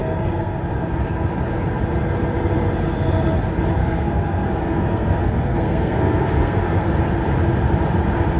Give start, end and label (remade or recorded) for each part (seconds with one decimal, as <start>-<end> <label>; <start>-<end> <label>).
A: 0.0-0.8 remade; 0.8-3.8 recorded; 3.8-6.9 remade; 6.9-8.4 recorded